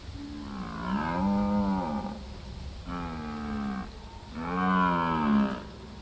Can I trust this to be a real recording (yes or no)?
yes